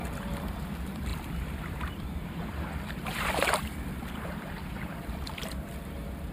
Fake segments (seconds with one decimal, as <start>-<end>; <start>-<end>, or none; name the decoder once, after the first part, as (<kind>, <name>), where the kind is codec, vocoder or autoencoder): 0.0-6.3 (vocoder, BigVGAN v2)